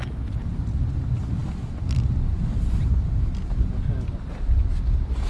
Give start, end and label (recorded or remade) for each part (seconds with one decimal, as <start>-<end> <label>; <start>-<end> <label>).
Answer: 0.0-5.3 recorded